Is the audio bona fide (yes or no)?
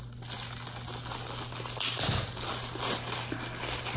yes